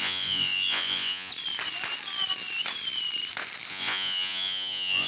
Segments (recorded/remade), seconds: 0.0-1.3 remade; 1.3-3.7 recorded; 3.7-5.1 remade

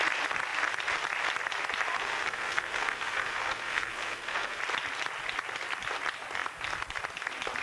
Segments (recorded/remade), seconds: 0.0-2.0 recorded; 2.0-4.6 remade; 4.6-7.6 recorded